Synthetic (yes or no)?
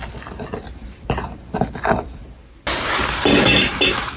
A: no